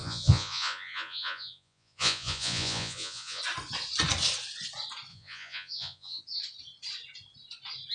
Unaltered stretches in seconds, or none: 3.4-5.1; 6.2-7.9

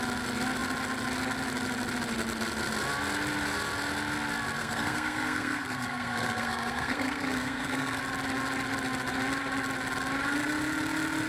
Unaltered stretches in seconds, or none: 0.0-4.6; 8.0-11.3

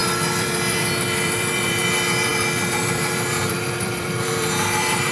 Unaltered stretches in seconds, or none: none

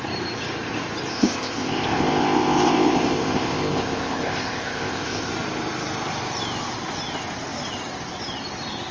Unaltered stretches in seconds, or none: 0.0-1.1; 5.3-8.9

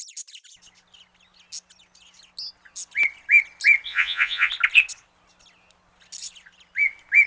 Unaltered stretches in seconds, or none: 0.0-3.9; 4.5-7.3